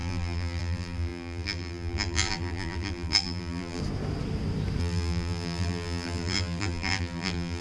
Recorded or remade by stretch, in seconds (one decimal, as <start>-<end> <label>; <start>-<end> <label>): 0.0-3.8 remade; 3.8-4.8 recorded; 4.8-7.6 remade